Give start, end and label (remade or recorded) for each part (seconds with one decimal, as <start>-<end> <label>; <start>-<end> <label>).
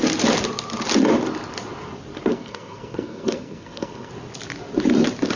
0.0-2.3 recorded; 2.3-4.1 remade; 4.1-5.4 recorded